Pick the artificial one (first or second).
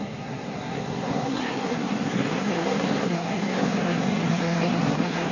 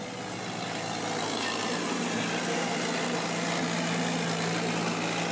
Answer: first